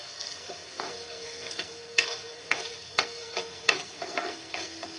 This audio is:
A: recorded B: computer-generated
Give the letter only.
B